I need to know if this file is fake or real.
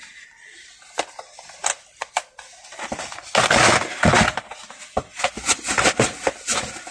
real